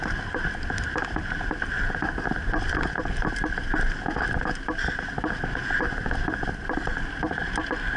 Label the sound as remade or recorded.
recorded